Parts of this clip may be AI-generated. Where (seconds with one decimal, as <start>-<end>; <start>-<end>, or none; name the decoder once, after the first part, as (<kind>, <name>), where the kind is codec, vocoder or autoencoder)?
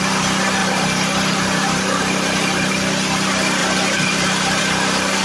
0.6-2.7 (vocoder, BigVGAN v2); 3.6-4.6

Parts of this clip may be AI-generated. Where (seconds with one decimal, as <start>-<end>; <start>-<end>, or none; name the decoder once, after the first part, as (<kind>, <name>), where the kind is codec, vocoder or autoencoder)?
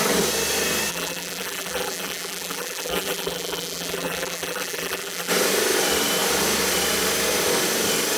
0.9-5.3 (vocoder, BigVGAN v2)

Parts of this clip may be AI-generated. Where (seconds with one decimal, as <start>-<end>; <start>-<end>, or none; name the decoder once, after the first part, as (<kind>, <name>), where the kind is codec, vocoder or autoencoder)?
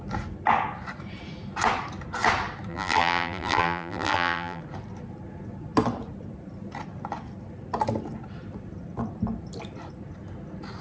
2.7-4.6 (vocoder, BigVGAN v2)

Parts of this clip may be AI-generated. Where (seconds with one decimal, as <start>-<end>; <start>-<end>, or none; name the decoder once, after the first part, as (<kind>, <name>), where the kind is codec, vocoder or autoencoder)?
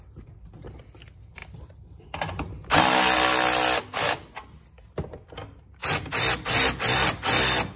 none